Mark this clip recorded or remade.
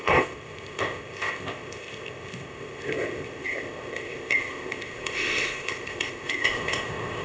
remade